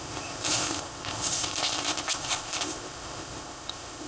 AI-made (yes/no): yes